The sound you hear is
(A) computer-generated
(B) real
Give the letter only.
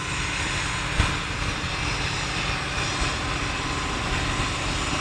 B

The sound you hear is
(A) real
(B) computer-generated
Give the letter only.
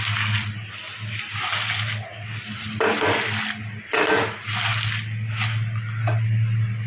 A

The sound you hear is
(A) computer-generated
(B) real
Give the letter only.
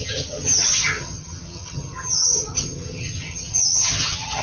A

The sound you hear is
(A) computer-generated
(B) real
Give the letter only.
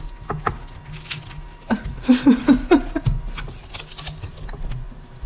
B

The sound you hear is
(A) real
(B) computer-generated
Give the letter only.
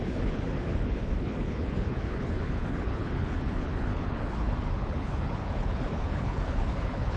B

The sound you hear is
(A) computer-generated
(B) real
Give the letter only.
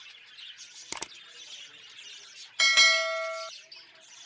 B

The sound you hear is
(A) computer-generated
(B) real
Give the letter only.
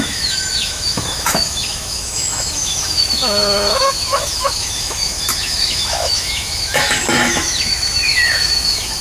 A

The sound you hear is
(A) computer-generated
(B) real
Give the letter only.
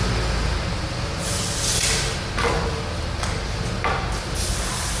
B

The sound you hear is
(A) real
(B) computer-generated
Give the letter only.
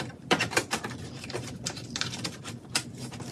B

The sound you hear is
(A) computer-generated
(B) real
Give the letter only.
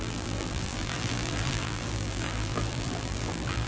A